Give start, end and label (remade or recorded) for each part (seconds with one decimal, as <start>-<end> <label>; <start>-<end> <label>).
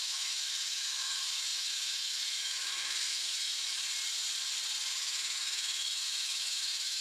0.0-3.9 remade; 3.9-4.9 recorded; 4.9-7.0 remade